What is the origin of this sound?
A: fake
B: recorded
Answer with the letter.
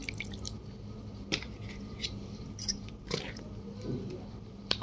B